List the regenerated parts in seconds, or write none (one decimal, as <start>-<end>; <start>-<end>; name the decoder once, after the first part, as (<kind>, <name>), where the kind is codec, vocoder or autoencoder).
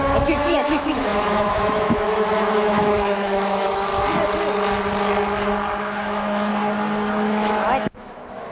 0.0-3.9 (autoencoder, DAC-VAE); 5.8-6.5; 7.1-8.5